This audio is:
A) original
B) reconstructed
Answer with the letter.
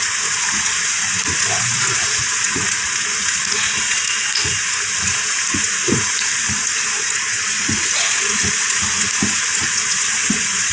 B